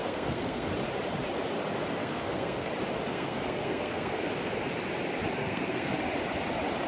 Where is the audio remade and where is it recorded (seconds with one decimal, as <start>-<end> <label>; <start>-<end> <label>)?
0.0-0.7 remade; 0.7-2.0 recorded; 2.0-2.7 remade; 2.7-3.1 recorded; 3.1-4.3 remade; 4.3-5.4 recorded; 5.4-6.0 remade; 6.0-6.9 recorded